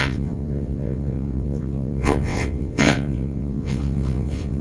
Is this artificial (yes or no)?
yes